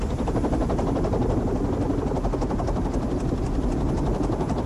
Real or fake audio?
real